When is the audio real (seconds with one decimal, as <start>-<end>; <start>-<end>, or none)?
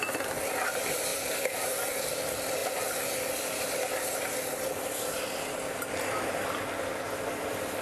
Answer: 0.0-7.8